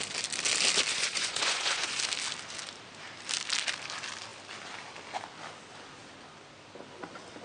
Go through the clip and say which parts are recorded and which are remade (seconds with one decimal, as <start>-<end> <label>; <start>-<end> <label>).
0.0-0.9 recorded; 0.9-2.0 remade; 2.0-7.4 recorded